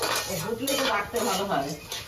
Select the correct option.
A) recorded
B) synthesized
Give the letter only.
A